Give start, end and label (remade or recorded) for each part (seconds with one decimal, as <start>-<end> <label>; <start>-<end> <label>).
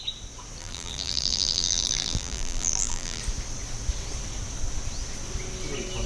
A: 0.0-0.6 recorded; 0.6-3.2 remade; 3.2-6.1 recorded